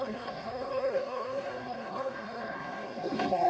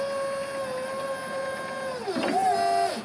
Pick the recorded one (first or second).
second